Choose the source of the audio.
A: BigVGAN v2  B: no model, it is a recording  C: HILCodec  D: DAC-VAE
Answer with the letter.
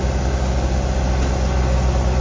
B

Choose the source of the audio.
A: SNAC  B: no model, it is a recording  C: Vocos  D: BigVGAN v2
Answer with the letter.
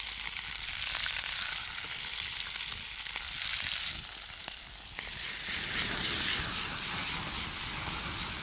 B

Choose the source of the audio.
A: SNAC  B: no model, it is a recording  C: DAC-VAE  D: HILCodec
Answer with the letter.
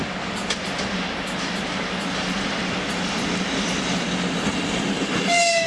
B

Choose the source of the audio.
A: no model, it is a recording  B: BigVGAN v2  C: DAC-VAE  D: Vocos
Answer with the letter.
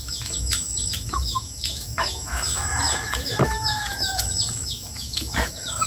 C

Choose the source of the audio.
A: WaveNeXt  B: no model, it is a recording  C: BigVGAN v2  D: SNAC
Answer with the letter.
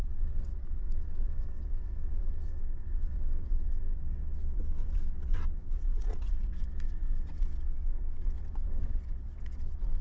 A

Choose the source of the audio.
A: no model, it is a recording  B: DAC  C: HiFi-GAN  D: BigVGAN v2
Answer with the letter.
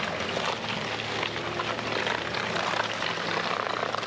A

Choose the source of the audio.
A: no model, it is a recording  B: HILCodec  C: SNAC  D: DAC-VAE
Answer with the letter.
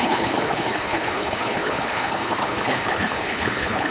B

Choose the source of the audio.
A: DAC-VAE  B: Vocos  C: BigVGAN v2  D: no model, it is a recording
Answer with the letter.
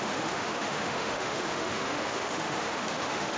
A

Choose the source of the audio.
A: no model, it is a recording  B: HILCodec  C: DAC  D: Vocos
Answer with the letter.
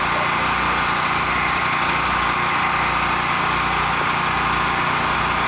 A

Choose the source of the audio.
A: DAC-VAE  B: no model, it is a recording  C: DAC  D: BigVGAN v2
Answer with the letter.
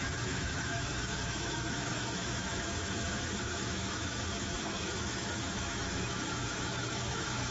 A